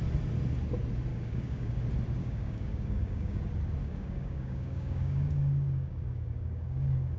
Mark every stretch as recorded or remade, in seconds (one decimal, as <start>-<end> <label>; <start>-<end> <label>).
0.0-1.1 recorded; 1.1-1.8 remade; 1.8-2.2 recorded; 2.2-3.4 remade; 3.4-3.8 recorded; 3.8-7.2 remade